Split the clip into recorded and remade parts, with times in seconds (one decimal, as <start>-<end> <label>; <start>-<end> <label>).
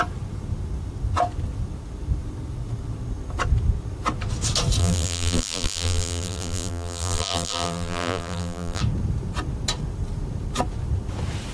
0.0-4.8 recorded; 4.8-8.8 remade; 8.8-11.5 recorded